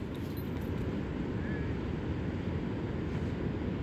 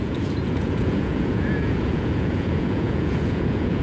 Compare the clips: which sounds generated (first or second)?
second